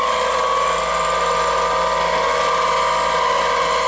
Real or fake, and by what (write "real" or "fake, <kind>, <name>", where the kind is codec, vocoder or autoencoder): real